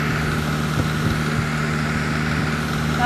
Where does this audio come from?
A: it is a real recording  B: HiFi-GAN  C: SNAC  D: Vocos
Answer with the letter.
A